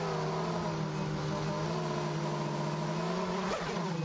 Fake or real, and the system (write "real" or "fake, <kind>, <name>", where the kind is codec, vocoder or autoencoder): real